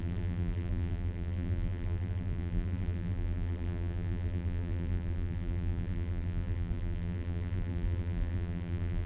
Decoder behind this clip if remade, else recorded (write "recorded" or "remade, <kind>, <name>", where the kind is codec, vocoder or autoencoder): remade, vocoder, BigVGAN v2